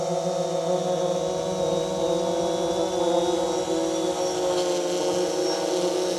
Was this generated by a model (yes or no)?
no